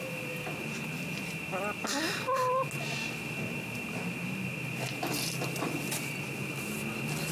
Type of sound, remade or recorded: recorded